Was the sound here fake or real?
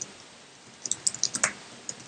real